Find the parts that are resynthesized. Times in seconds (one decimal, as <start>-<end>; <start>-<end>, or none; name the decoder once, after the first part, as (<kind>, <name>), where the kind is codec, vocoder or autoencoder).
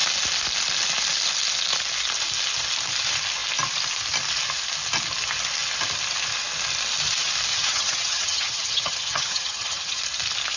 7.5-10.0 (vocoder, HiFi-GAN)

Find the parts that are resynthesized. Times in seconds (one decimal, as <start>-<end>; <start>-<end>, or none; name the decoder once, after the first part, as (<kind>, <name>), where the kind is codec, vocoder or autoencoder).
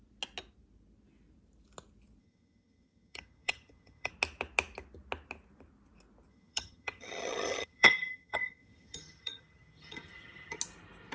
2.2-4.1 (vocoder, HiFi-GAN); 6.3-10.6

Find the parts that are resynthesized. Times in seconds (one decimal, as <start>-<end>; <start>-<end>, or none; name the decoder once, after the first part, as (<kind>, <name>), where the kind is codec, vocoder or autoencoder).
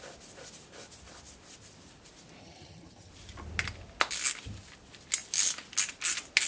2.4-3.1 (vocoder, HiFi-GAN)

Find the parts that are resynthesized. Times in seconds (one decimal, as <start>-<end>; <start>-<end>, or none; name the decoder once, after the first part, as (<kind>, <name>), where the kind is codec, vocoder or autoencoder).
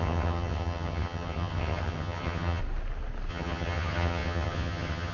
0.0-2.6 (vocoder, HiFi-GAN); 3.3-5.1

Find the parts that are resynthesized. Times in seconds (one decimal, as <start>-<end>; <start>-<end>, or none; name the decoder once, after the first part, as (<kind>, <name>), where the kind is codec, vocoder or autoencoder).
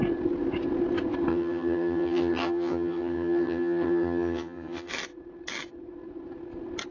1.3-4.9 (vocoder, HiFi-GAN)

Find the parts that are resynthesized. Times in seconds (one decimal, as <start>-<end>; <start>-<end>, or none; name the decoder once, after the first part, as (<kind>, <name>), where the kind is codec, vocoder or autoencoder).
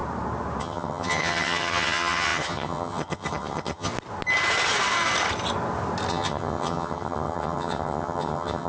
0.6-3.9 (vocoder, HiFi-GAN); 6.1-8.7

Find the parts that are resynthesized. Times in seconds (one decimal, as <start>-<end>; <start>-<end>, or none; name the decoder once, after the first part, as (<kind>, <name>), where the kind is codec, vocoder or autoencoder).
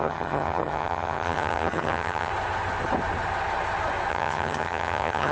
0.0-2.3 (vocoder, HiFi-GAN); 4.1-5.3